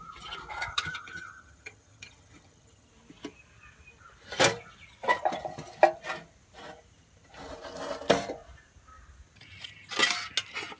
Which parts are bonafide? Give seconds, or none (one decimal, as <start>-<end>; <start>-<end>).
0.0-0.7; 2.9-10.8